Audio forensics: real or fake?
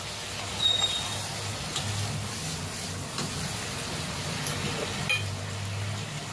real